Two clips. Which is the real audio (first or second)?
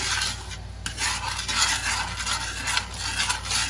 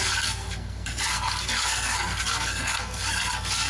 first